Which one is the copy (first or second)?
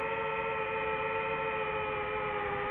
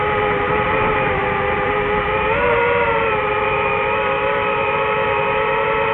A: second